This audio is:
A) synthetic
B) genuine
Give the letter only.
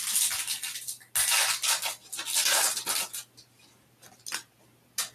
B